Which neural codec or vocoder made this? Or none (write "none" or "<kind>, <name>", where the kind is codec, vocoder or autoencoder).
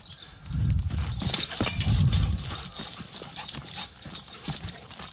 none